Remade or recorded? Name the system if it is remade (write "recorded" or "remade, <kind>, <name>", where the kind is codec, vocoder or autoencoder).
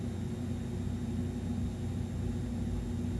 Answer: recorded